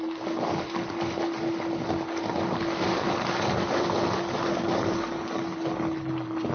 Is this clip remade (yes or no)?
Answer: no